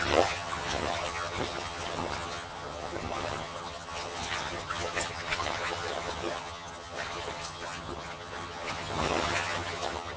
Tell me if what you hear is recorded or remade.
remade